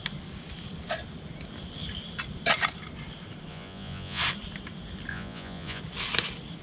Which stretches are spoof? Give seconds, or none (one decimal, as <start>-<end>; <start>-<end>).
3.5-4.2; 5.1-5.8